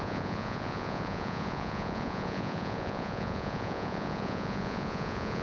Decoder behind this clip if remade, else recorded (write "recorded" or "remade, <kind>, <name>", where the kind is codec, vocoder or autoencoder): remade, vocoder, Vocos